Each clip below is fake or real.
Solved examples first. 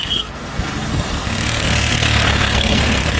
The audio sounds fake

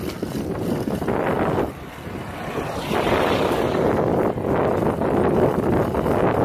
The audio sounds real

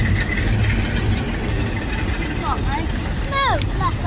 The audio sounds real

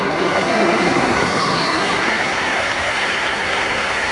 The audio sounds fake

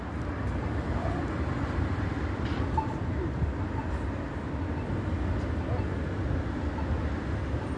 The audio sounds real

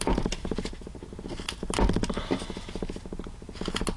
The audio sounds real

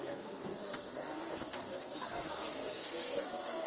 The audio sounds fake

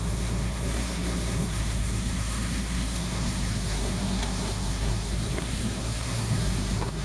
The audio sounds fake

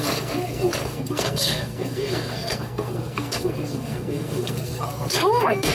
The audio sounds fake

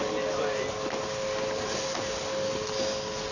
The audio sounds real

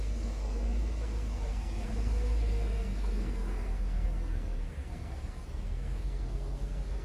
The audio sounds fake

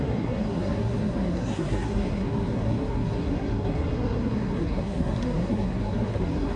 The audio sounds fake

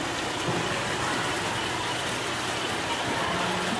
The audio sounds real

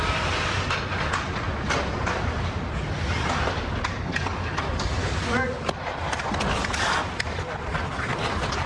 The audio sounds real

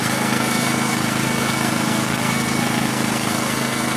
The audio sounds fake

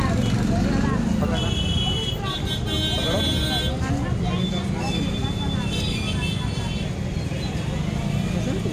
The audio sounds real